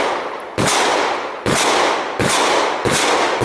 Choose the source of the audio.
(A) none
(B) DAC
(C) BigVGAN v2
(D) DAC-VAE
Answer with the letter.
A